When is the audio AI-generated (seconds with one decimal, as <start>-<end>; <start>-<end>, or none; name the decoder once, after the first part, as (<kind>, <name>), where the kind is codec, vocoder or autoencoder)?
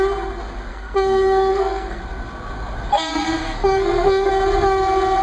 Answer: 0.7-2.0 (codec, SNAC); 2.9-4.3